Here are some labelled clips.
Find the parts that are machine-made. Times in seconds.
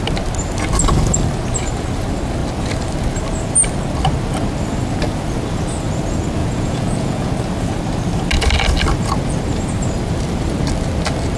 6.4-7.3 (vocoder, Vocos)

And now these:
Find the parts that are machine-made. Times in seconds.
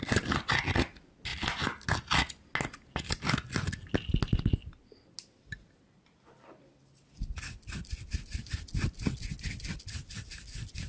none